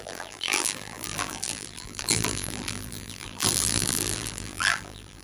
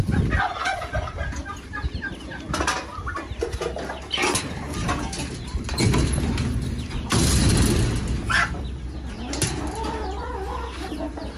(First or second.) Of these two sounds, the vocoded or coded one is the first